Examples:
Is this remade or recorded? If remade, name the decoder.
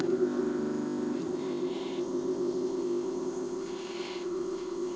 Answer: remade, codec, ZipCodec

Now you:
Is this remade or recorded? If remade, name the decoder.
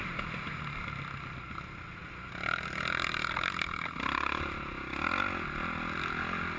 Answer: recorded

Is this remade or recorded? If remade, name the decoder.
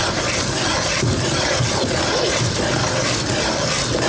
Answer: recorded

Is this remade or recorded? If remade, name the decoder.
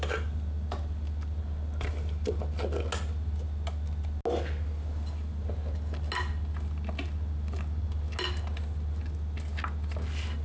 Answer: recorded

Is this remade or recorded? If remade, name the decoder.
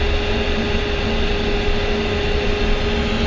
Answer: recorded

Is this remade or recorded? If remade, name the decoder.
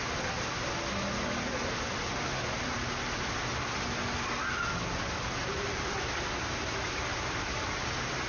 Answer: recorded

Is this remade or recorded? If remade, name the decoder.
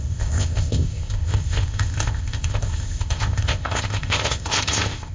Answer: remade, codec, ZipCodec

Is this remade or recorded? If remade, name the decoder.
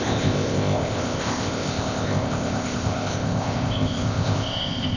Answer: remade, codec, ZipCodec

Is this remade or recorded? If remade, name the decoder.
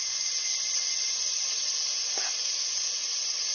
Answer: recorded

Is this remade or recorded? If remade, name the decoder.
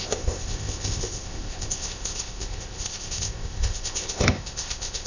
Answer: remade, codec, ZipCodec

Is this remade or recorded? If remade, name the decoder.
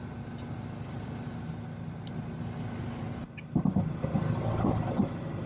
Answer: recorded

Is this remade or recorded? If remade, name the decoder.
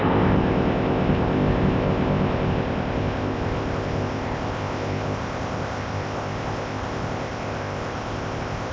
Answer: remade, codec, ZipCodec